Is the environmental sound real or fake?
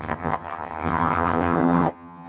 fake